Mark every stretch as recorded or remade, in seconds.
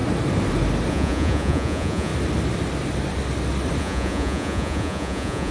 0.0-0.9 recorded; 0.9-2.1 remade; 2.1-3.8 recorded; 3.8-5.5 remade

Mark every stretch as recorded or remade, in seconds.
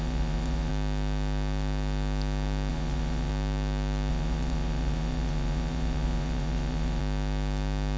0.0-0.7 remade; 0.7-2.7 recorded; 2.7-3.3 remade; 3.3-4.1 recorded; 4.1-7.0 remade; 7.0-8.0 recorded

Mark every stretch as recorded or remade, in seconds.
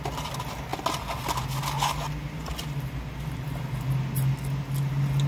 0.0-5.3 recorded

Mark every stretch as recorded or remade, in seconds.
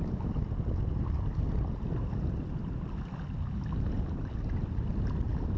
0.0-5.6 recorded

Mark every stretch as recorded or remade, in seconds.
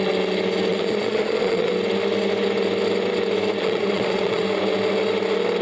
0.0-0.7 recorded; 0.7-1.7 remade; 1.7-3.6 recorded; 3.6-4.4 remade; 4.4-5.6 recorded